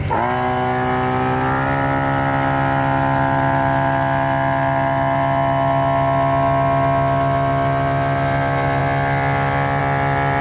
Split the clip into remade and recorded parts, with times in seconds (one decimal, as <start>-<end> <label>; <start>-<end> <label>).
0.0-10.4 recorded